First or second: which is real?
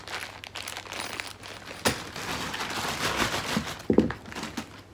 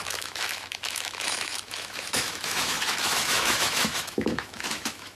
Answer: first